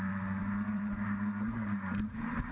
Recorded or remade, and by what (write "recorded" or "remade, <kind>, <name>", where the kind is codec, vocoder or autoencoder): remade, vocoder, BigVGAN v2